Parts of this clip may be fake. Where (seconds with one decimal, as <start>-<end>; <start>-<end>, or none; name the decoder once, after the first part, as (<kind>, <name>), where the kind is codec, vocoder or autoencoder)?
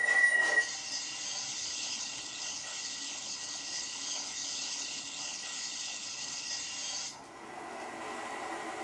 1.5-6.5 (codec, HILCodec)